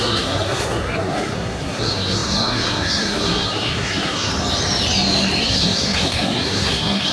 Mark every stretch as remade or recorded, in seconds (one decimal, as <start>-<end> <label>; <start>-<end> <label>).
0.0-4.3 remade; 4.3-5.4 recorded; 5.4-7.1 remade